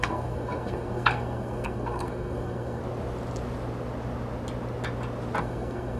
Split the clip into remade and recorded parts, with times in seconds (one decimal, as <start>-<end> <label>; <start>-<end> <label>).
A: 0.0-2.8 remade; 2.8-5.4 recorded; 5.4-6.0 remade